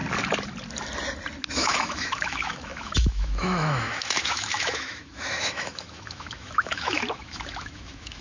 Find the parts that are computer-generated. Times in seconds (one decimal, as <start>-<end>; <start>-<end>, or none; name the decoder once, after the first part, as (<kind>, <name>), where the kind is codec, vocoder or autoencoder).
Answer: 1.5-8.2 (autoencoder, DAC-VAE)